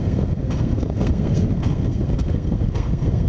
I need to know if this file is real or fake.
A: fake